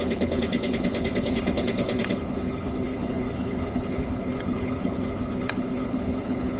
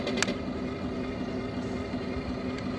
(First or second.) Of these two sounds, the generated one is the first